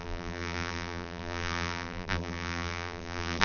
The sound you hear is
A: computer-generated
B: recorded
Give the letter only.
A